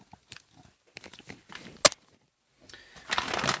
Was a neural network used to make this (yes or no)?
no